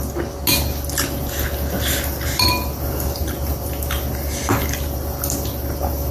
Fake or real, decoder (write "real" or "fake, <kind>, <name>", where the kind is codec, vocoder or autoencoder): real